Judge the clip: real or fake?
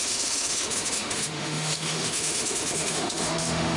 fake